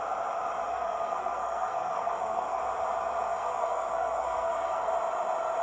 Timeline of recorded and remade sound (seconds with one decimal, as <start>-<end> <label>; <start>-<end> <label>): 0.0-0.7 recorded; 0.7-2.6 remade; 2.6-3.3 recorded; 3.3-4.9 remade; 4.9-5.6 recorded